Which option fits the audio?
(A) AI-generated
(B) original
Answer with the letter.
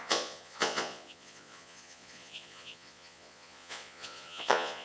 A